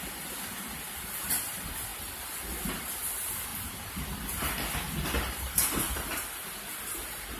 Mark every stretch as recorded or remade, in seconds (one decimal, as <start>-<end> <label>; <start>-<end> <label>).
0.0-7.4 recorded